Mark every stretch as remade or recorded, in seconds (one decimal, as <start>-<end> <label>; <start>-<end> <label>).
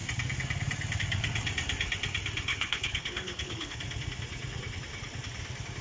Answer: 0.0-2.5 recorded; 2.5-3.8 remade; 3.8-5.8 recorded